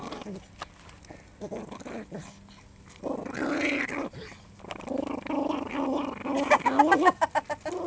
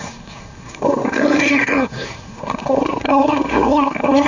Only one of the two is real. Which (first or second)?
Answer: first